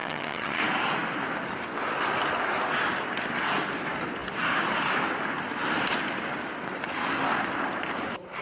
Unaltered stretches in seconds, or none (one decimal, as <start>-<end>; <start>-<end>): 0.6-8.4